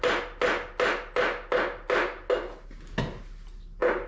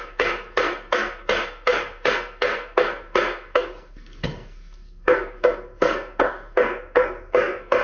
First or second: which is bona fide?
first